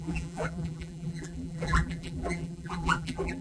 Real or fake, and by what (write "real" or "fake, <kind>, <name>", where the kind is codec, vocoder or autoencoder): fake, vocoder, BigVGAN v2